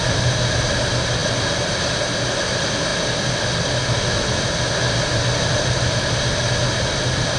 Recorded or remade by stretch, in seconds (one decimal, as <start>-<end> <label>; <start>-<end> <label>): 0.0-7.4 recorded